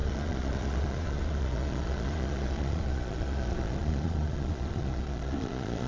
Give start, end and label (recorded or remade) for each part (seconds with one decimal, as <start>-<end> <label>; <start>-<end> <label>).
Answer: 0.0-5.9 remade